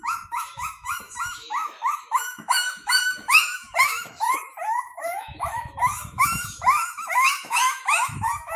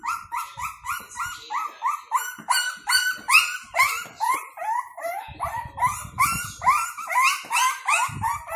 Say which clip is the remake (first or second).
first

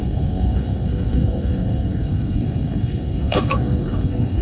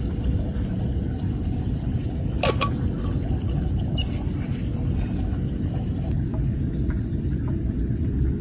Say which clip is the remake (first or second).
first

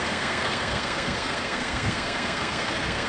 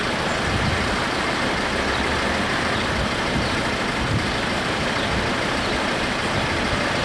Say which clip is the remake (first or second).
first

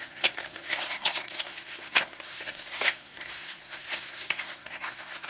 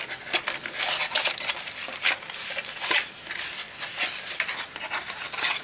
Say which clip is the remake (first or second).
first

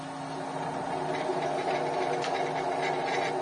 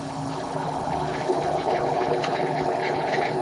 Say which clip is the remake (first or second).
second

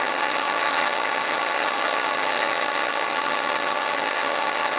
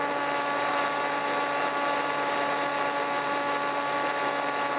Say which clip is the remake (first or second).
first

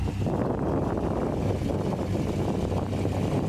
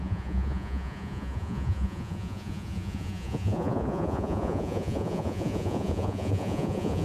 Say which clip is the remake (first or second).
second